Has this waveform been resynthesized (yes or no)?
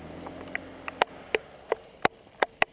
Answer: no